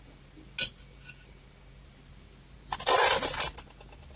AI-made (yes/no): no